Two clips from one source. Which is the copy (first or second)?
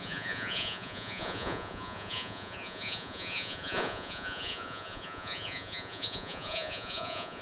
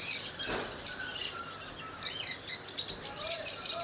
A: first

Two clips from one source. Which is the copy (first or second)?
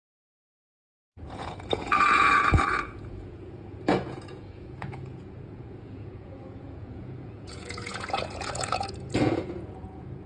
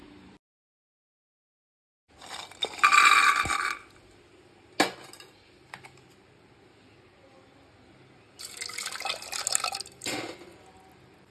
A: first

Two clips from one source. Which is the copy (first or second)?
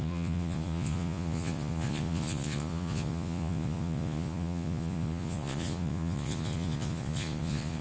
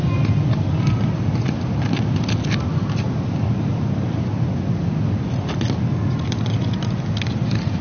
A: first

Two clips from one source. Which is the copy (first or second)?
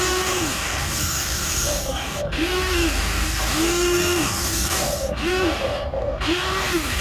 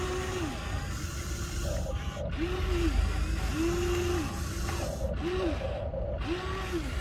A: first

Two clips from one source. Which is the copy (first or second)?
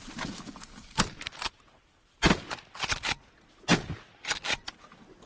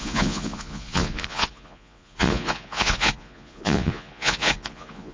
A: second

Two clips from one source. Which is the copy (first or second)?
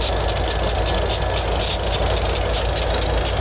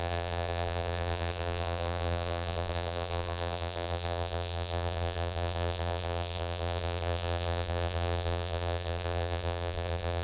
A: second